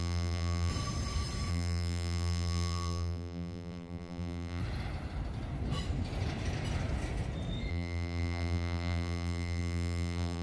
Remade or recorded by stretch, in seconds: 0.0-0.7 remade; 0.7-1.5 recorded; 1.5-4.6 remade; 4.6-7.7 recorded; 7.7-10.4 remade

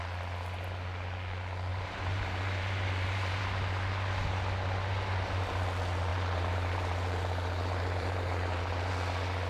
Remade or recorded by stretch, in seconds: 0.0-1.7 recorded; 1.7-3.4 remade; 3.4-6.1 recorded; 6.1-8.9 remade; 8.9-9.5 recorded

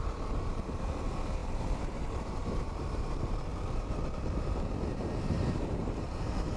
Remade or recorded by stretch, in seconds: 0.0-6.6 remade

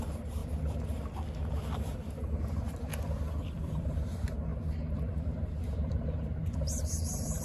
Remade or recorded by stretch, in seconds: 0.0-0.4 remade; 0.4-2.4 recorded; 2.4-2.9 remade; 2.9-3.8 recorded; 3.8-4.5 remade; 4.5-5.0 recorded; 5.0-7.4 remade

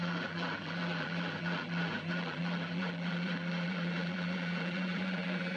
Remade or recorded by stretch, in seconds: 0.0-5.6 remade

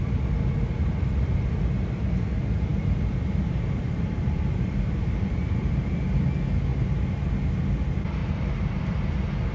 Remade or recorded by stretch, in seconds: 0.0-2.7 recorded; 2.7-6.2 remade; 6.2-6.7 recorded; 6.7-7.3 remade; 7.3-8.2 recorded; 8.2-8.8 remade; 8.8-9.5 recorded